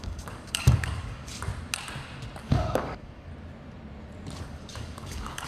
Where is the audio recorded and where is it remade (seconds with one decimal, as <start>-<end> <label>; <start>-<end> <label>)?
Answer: 0.0-1.5 remade; 1.5-2.4 recorded; 2.4-3.3 remade; 3.3-4.4 recorded; 4.4-5.5 remade